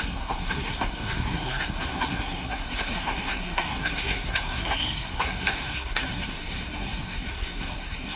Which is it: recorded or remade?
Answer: remade